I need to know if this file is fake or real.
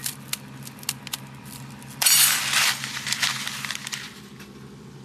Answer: real